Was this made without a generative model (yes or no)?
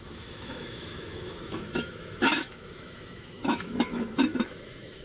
no